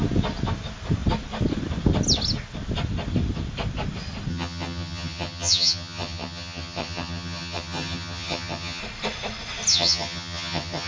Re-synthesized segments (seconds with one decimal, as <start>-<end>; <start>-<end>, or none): 4.3-8.8; 9.7-10.9